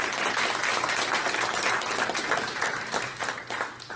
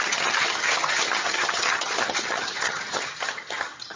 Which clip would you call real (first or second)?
first